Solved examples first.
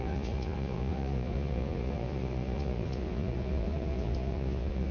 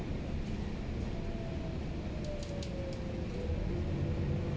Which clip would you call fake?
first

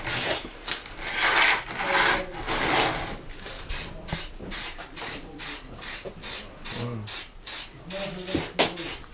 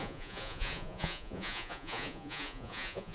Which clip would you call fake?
second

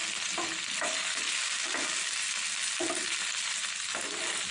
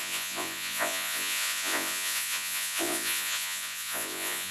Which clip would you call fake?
second